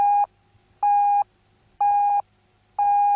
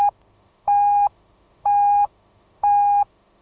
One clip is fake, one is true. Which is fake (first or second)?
second